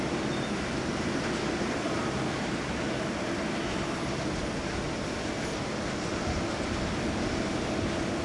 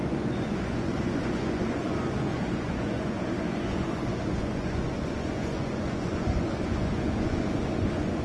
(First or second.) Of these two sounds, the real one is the first